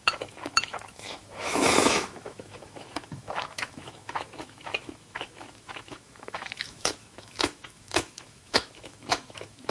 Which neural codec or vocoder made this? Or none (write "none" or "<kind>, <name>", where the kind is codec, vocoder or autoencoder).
autoencoder, DAC-VAE